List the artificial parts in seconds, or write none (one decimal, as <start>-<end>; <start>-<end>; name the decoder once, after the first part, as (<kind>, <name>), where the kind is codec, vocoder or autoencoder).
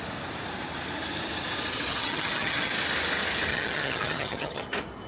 1.9-2.7 (vocoder, HiFi-GAN); 3.5-4.6